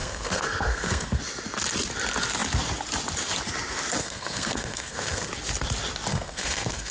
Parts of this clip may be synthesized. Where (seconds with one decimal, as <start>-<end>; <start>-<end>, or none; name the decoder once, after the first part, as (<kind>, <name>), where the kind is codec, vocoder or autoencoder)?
0.0-1.2 (codec, SNAC); 4.0-5.3; 6.1-6.9